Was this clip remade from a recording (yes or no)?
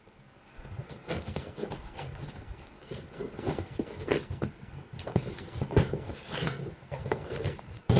yes